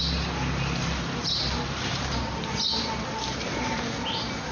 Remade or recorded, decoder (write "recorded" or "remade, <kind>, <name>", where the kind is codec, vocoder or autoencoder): recorded